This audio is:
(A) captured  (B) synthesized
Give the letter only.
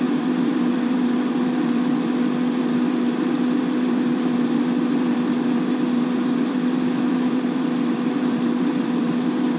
B